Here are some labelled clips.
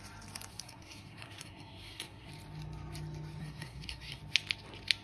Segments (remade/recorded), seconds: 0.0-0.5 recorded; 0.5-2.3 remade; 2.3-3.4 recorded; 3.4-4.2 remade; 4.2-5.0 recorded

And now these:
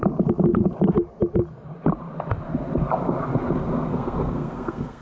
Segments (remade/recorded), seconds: 0.0-3.9 recorded; 3.9-5.0 remade

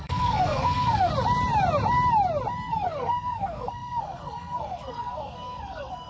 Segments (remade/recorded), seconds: 0.0-1.1 remade; 1.1-2.5 recorded; 2.5-6.1 remade

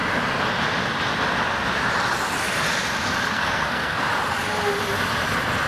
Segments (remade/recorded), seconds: 0.0-3.3 recorded; 3.3-4.1 remade; 4.1-5.7 recorded

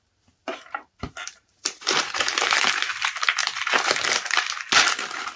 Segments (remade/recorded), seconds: 0.0-1.2 recorded; 1.2-2.9 remade; 2.9-3.4 recorded; 3.4-3.9 remade; 3.9-5.4 recorded